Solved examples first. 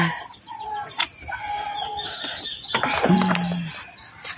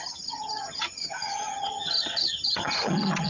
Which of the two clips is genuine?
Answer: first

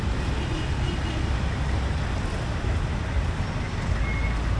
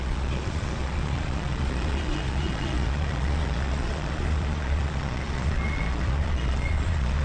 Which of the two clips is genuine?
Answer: first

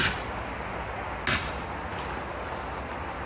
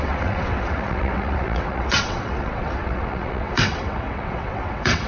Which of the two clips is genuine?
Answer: first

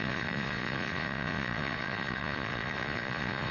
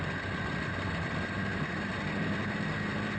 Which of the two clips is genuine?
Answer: second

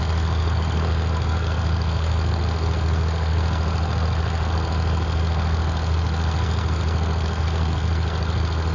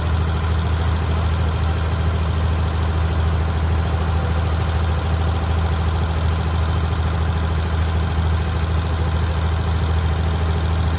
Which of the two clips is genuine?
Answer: second